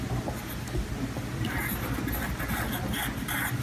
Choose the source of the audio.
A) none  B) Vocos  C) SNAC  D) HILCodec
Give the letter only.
A